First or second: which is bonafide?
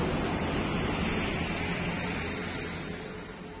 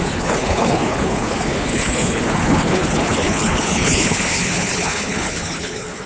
first